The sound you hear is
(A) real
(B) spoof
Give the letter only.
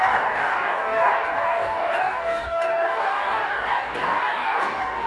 B